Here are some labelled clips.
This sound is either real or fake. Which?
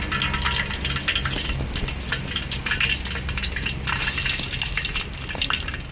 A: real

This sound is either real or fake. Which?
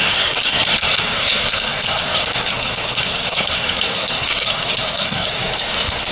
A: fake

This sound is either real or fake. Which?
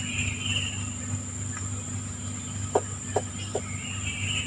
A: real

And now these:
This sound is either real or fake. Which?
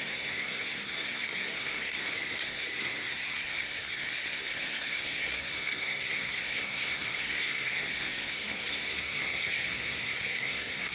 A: fake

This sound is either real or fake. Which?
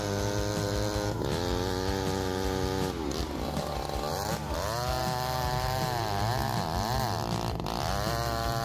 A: real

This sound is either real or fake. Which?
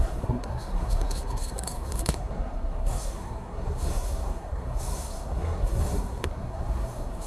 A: fake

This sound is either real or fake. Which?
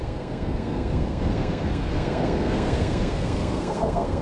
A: fake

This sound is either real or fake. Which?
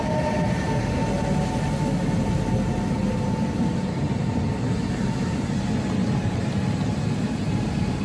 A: real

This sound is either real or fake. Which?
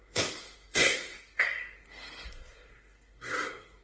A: fake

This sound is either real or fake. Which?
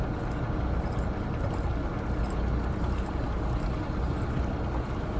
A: real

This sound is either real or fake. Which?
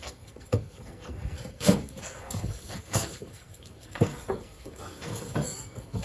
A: fake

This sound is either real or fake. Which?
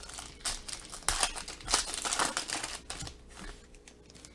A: real